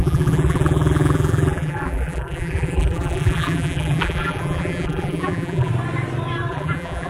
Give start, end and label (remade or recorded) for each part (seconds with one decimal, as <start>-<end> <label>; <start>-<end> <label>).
0.0-5.7 remade; 5.7-6.5 recorded; 6.5-7.1 remade